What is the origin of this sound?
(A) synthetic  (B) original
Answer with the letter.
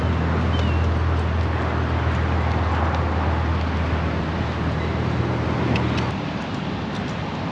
B